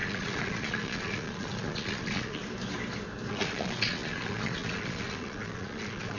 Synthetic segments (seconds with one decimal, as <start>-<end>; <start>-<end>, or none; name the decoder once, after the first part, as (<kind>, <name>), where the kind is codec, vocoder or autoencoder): 0.0-2.4 (vocoder, Vocos); 3.3-6.2